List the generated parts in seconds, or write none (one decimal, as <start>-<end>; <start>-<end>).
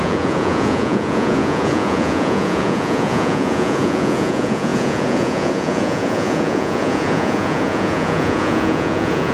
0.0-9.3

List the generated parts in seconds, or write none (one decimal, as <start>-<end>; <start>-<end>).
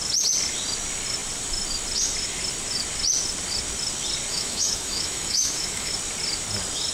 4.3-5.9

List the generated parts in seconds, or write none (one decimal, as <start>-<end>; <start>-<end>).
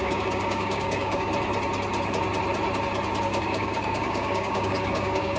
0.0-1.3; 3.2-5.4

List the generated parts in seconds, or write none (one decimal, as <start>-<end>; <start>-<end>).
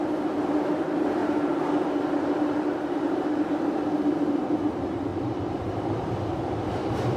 1.2-3.6; 5.1-5.7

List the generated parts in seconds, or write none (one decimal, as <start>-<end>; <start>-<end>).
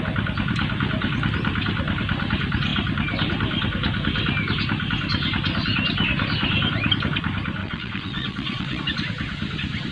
7.6-8.8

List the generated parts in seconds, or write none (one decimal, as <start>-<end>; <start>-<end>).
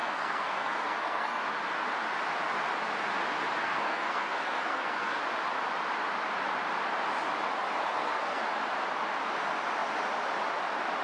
0.0-1.4; 3.6-5.2; 7.9-8.4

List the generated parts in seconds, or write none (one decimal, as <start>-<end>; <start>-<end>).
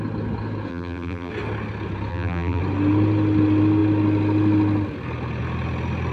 0.7-1.3; 2.1-2.6